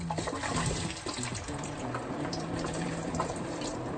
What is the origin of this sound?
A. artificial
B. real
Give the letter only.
A